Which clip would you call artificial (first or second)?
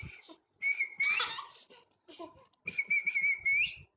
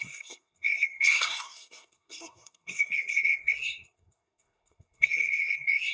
second